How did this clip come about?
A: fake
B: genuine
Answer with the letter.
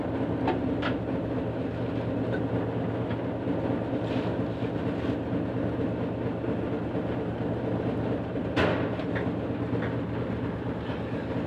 B